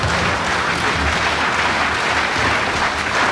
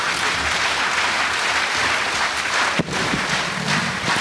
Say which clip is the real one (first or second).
first